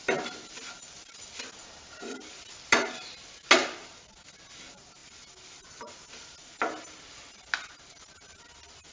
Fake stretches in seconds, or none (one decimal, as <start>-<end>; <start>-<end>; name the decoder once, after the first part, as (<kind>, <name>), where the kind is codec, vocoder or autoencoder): none